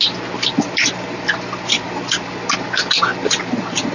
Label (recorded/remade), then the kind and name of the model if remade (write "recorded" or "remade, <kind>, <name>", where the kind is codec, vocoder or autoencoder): recorded